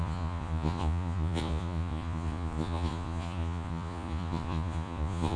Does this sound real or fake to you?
fake